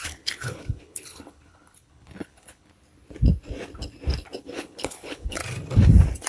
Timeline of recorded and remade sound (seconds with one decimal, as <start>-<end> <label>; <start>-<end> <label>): 0.0-2.7 remade; 2.7-4.4 recorded; 4.4-5.4 remade; 5.4-6.3 recorded